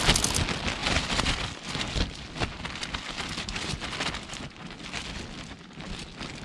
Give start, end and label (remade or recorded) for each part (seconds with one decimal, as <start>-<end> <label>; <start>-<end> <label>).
0.0-6.4 recorded